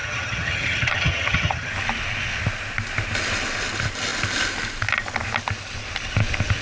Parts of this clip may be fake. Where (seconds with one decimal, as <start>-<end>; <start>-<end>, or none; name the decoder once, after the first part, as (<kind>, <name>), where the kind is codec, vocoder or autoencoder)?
0.0-1.7 (vocoder, HiFi-GAN)